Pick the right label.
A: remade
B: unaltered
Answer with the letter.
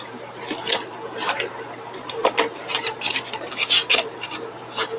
A